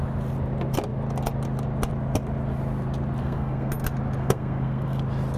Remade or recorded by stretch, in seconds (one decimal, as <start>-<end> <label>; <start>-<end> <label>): 0.0-3.2 recorded; 3.2-3.7 remade; 3.7-4.2 recorded; 4.2-5.0 remade; 5.0-5.4 recorded